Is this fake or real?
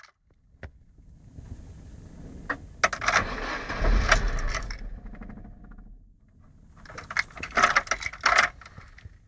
real